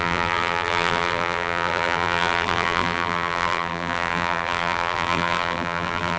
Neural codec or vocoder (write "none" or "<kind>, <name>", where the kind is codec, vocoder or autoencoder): vocoder, BigVGAN v2